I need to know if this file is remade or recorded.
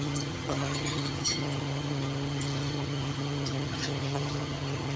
remade